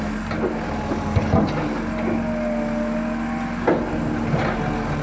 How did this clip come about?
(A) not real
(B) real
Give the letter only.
B